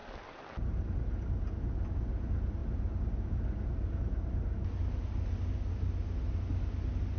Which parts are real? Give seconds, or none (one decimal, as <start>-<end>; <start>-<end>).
0.0-7.2